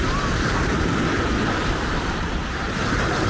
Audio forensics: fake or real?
fake